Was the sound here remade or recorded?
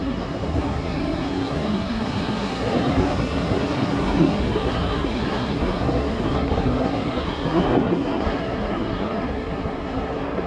remade